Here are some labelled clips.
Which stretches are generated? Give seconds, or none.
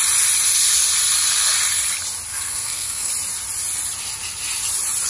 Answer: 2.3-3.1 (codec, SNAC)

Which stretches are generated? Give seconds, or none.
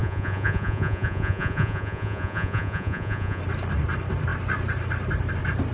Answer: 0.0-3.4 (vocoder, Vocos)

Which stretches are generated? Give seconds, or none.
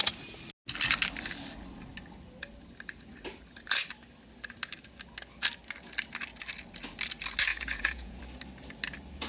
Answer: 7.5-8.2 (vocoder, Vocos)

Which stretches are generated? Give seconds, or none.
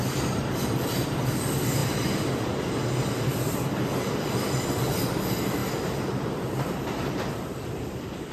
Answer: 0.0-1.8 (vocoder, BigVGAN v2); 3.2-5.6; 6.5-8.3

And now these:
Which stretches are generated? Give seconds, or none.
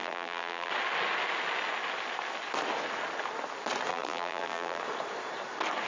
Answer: 0.0-0.7 (vocoder, BigVGAN v2); 3.9-4.8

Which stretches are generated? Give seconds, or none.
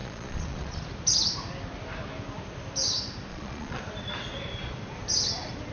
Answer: 0.0-0.8 (vocoder, Vocos); 3.3-3.8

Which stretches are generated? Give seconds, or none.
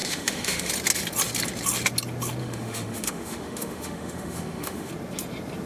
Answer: 0.0-0.7 (autoencoder, DAC-VAE); 2.4-4.9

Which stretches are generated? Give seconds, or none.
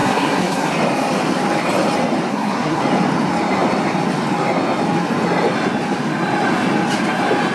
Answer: 0.0-0.7 (codec, SNAC); 2.3-2.8